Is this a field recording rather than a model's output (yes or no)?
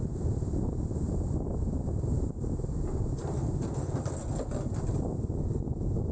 yes